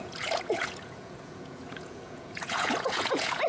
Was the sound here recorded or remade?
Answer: remade